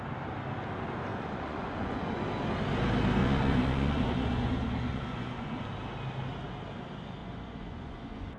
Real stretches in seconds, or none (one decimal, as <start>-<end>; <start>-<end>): 0.0-1.1; 2.2-3.2; 5.6-7.2